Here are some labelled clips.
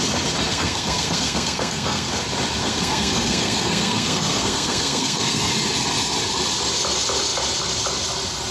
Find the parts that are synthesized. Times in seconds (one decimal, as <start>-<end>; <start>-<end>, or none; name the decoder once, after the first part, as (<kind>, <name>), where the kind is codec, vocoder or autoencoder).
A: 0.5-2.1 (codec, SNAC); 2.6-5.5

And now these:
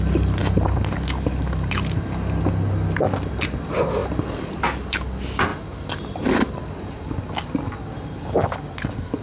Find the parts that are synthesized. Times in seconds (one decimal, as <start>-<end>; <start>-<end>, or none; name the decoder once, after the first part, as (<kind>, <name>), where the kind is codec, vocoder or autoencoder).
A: none

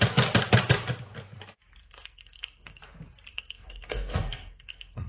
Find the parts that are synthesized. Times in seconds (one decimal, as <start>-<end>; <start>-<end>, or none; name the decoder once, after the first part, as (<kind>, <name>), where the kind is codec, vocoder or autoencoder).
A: 1.8-2.8 (codec, SNAC); 3.3-5.1

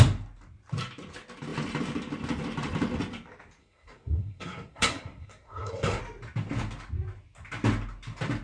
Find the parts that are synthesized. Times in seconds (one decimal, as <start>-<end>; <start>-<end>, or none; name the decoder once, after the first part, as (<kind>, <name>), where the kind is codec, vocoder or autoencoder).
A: 3.6-6.0 (codec, SNAC)

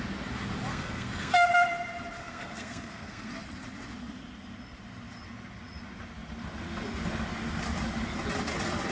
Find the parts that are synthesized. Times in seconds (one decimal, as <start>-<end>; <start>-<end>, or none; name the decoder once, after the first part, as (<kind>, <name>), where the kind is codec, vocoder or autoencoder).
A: 0.7-1.5 (codec, SNAC); 2.2-3.3

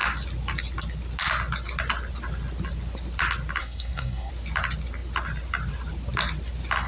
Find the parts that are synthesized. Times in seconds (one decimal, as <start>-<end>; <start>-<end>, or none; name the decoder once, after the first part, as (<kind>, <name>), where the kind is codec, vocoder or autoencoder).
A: 3.6-4.3 (codec, SNAC)

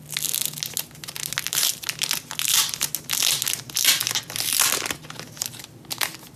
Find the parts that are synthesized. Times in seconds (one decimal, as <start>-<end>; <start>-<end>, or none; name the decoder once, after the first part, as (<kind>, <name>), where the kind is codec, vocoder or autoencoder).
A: none

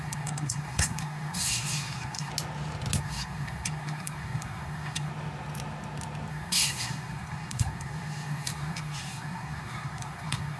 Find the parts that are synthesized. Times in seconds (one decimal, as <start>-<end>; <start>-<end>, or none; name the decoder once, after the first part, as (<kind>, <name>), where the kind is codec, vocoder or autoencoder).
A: 0.0-2.3 (codec, SNAC); 3.0-5.1; 6.3-10.6